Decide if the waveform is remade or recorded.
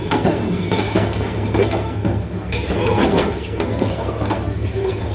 remade